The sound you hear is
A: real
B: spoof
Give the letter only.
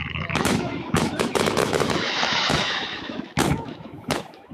B